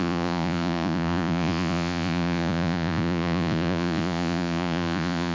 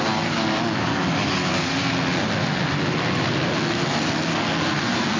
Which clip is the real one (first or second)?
second